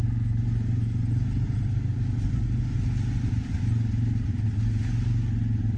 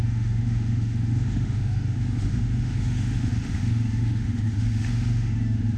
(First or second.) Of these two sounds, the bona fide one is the first